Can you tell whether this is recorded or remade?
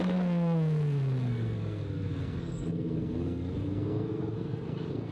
remade